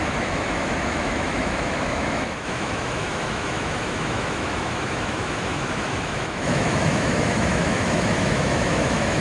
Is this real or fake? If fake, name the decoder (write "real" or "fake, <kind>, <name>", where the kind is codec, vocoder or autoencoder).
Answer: fake, autoencoder, DAC-VAE